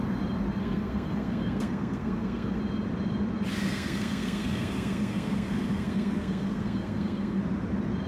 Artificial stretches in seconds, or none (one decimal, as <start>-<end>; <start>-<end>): 0.6-2.6; 3.6-7.4